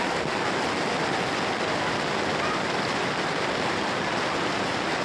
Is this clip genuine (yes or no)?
yes